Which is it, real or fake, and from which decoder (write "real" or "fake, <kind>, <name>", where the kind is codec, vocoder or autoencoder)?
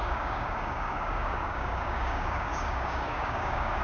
fake, codec, DAC